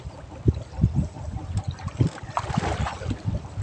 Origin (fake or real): real